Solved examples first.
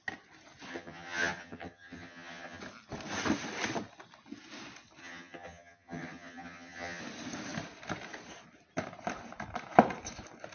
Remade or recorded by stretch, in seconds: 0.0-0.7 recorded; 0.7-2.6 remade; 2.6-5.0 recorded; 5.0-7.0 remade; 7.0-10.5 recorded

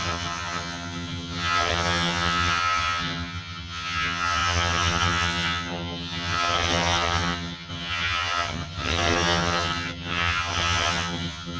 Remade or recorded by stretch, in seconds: 0.0-11.6 remade

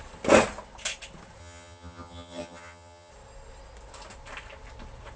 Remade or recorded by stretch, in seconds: 0.0-1.4 recorded; 1.4-3.1 remade; 3.1-5.2 recorded

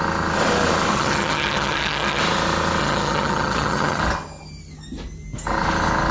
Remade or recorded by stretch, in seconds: 0.0-0.9 recorded; 0.9-2.2 remade; 2.2-2.8 recorded; 2.8-4.0 remade; 4.0-6.1 recorded

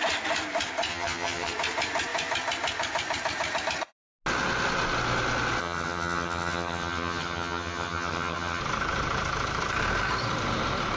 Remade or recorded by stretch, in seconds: 0.0-0.9 recorded; 0.9-1.5 remade; 1.5-5.6 recorded; 5.6-8.6 remade; 8.6-11.0 recorded